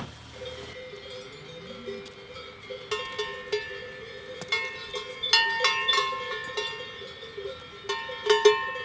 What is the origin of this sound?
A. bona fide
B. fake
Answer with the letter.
A